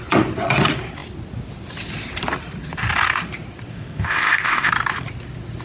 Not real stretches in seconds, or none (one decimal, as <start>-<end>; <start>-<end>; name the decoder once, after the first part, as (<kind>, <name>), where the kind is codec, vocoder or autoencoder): 3.7-4.7 (codec, ZipCodec)